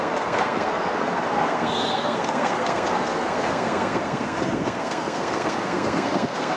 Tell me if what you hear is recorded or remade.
remade